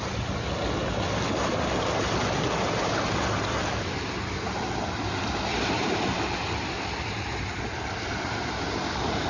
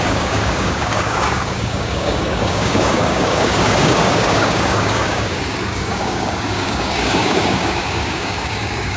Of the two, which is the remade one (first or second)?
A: second